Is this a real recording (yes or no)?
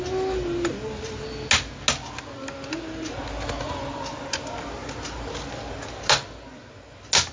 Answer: yes